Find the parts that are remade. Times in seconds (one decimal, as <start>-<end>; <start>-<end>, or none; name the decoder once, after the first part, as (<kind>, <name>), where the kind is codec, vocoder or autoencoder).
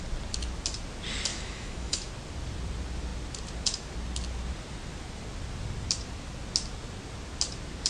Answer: 1.3-2.1 (autoencoder, DAC-VAE)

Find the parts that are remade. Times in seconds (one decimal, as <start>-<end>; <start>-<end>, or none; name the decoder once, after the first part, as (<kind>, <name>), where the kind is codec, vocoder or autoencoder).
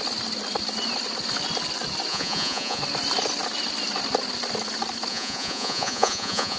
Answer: 2.1-2.8 (vocoder, Vocos); 5.1-6.6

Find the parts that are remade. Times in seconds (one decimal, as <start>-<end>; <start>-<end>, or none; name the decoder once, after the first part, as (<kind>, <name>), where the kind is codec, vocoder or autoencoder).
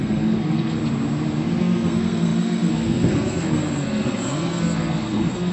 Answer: 0.0-0.8 (codec, SNAC); 1.6-5.5